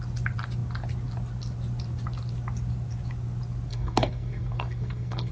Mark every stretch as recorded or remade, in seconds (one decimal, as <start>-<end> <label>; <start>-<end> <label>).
0.0-3.7 recorded; 3.7-5.3 remade